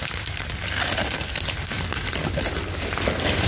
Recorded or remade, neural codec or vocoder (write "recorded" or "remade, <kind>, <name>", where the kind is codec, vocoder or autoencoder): recorded